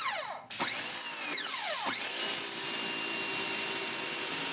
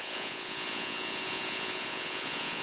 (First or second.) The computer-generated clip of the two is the second